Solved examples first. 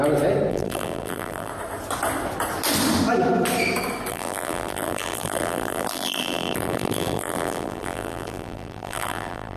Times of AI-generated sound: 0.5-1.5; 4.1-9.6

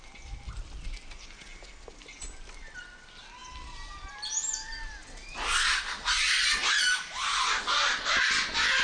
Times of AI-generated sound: none

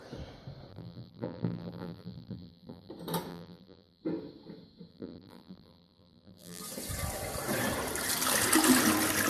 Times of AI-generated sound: 0.7-2.9; 3.3-4.0; 4.9-6.6

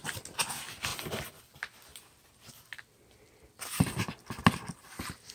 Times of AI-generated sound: none

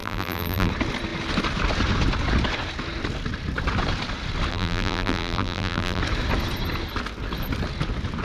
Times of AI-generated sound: 0.0-0.7; 4.5-6.0

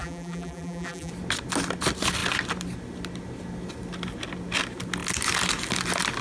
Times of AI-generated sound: 0.0-1.1

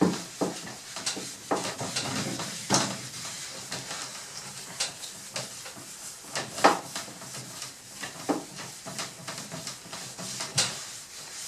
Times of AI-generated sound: 4.1-4.9; 10.5-11.5

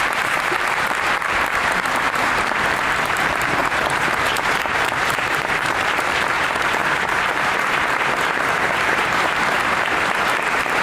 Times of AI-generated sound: 0.0-3.6; 4.4-10.8